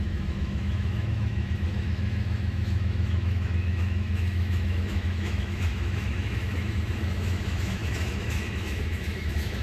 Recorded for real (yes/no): no